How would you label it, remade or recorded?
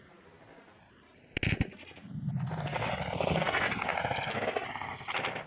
recorded